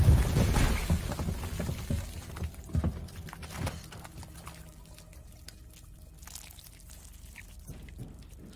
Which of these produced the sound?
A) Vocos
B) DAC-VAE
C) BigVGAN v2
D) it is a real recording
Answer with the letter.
D